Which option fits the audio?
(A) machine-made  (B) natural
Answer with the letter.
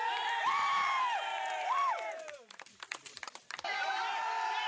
A